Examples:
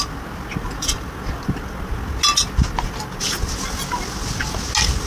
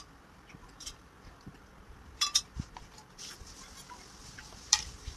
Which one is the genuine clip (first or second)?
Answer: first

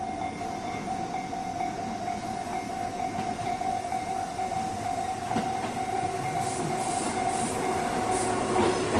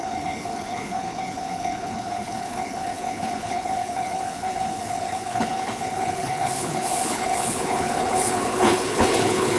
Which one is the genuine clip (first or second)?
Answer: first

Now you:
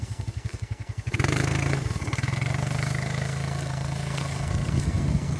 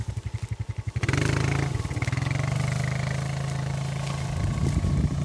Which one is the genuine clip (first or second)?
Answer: second